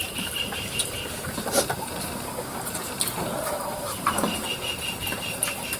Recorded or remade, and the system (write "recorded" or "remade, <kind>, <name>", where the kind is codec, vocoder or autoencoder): remade, vocoder, BigVGAN v2